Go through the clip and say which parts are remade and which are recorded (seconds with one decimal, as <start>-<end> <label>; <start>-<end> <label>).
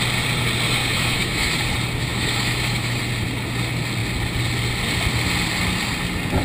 0.0-0.8 recorded; 0.8-1.6 remade; 1.6-2.1 recorded; 2.1-3.0 remade; 3.0-6.4 recorded